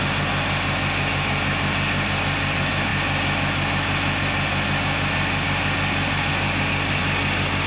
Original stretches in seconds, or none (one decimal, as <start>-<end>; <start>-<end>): 0.0-7.7